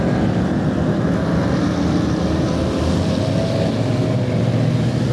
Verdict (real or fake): real